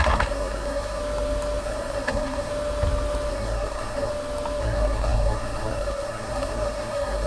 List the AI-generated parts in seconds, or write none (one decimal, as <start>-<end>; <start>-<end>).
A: 0.0-1.0; 1.6-2.5; 3.3-4.1; 4.6-7.3

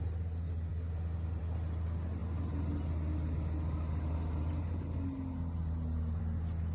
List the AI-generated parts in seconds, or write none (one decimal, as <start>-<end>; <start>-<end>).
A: none

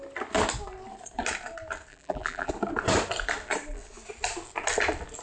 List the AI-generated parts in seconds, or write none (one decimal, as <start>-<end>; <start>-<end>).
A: 1.9-2.5

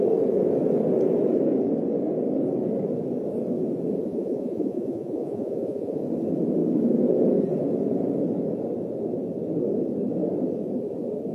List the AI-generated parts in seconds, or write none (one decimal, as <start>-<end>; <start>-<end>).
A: 4.1-6.0